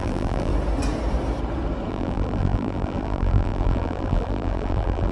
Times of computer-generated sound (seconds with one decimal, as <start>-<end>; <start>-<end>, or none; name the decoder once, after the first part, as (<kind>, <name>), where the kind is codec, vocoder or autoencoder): 0.0-0.5 (vocoder, BigVGAN v2); 1.9-5.1